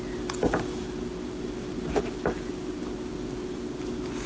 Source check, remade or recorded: recorded